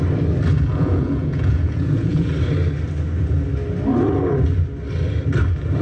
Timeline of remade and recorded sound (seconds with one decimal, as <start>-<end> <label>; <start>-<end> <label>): 0.0-0.7 recorded; 0.7-2.3 remade; 2.3-5.8 recorded